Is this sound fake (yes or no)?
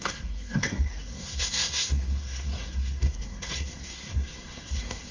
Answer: yes